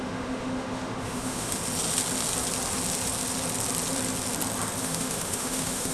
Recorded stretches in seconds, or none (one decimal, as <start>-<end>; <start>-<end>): 1.6-4.8